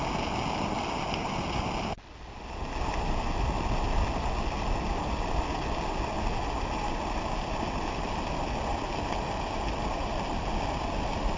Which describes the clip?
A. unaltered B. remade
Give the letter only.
A